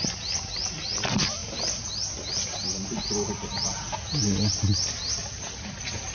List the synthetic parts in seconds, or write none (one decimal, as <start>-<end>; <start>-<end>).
none